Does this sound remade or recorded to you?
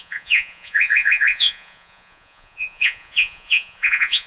remade